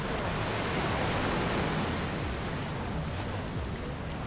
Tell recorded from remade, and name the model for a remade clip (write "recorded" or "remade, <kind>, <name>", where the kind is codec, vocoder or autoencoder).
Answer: recorded